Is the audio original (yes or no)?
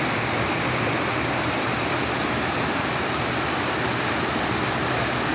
yes